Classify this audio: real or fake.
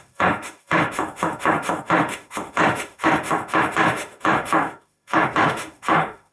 fake